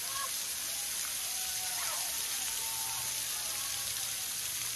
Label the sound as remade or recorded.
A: recorded